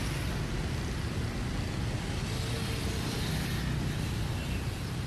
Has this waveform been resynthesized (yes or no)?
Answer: no